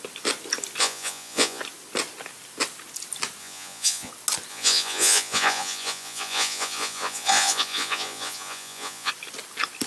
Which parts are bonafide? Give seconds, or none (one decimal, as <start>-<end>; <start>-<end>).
0.0-0.8; 1.6-3.4; 4.1-4.5; 9.1-9.9